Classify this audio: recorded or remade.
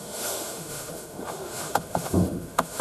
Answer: remade